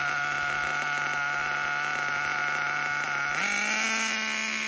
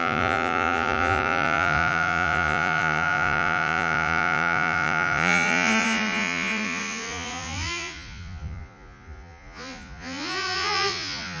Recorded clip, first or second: first